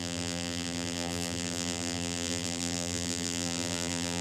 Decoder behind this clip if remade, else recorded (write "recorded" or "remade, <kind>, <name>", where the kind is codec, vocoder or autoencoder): remade, vocoder, BigVGAN v2